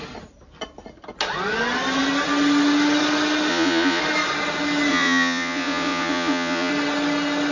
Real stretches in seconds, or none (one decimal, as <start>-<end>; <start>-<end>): 0.0-3.5; 4.0-4.9; 6.7-7.5